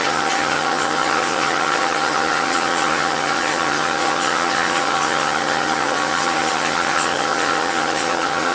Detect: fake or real fake